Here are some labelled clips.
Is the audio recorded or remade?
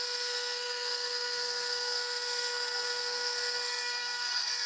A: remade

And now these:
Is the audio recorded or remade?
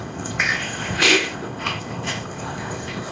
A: remade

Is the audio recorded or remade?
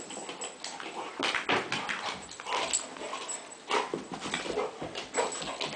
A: recorded